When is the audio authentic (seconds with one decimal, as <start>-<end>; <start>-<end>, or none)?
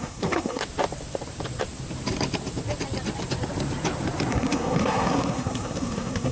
0.6-4.3